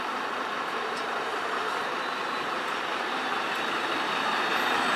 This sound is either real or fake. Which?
fake